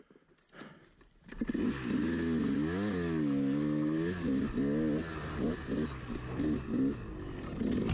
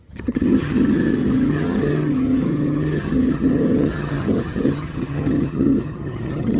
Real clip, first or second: first